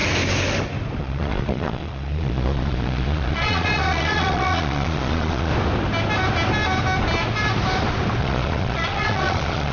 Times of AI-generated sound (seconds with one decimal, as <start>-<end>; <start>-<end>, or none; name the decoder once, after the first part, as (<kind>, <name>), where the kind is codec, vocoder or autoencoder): 1.0-5.5 (vocoder, Vocos); 8.2-9.7